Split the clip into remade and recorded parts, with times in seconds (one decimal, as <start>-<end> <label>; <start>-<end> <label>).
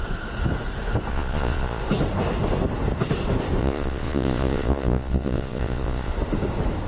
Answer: 0.0-1.1 recorded; 1.1-1.8 remade; 1.8-3.6 recorded; 3.6-6.1 remade; 6.1-6.9 recorded